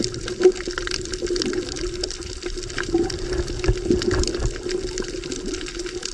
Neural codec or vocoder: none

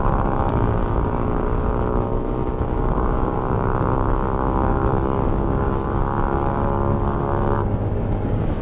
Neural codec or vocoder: codec, DAC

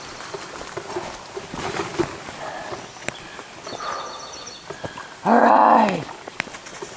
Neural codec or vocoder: none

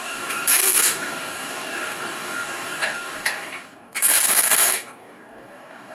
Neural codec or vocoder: codec, DAC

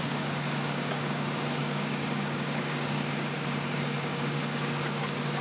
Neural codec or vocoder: codec, DAC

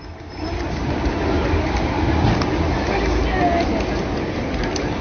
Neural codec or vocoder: none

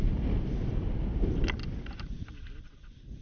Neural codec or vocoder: none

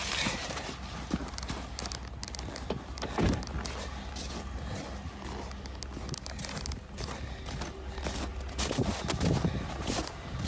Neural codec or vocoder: none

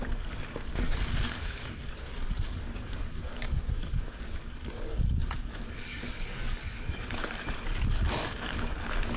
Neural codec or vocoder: codec, DAC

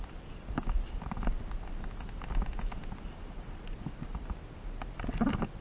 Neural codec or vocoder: none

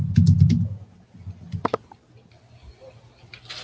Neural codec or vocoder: none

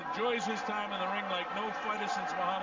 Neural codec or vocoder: none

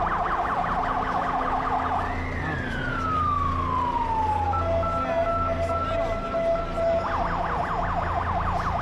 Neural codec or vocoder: none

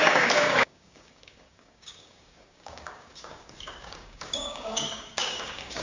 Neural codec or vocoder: codec, DAC